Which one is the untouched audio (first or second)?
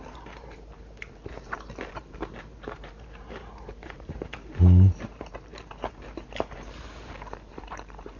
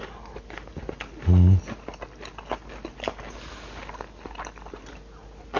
second